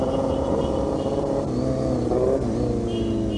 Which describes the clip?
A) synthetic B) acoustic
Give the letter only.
B